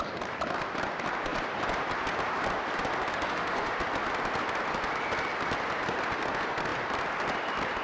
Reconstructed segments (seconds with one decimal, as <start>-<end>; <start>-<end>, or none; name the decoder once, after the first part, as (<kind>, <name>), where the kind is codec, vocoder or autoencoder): 3.1-3.7 (autoencoder, DAC-VAE)